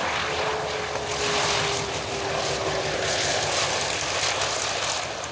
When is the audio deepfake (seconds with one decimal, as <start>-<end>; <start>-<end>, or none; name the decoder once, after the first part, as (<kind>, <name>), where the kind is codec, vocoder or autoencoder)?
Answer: none